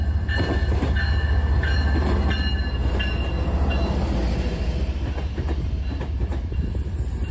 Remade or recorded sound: recorded